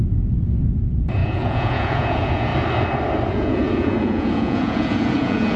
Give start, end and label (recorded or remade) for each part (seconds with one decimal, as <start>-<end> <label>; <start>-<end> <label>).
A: 0.0-2.5 remade; 2.5-3.3 recorded; 3.3-5.6 remade